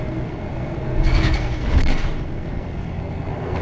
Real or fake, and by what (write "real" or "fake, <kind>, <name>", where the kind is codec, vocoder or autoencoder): fake, codec, SNAC